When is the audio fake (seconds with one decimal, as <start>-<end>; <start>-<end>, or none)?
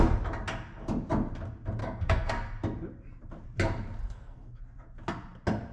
1.8-2.3; 4.0-4.6